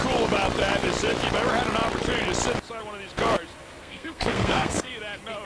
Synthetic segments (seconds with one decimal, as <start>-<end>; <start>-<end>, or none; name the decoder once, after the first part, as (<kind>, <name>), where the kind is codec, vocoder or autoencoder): 3.8-4.9 (codec, SNAC)